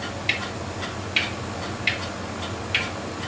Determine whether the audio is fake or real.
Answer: real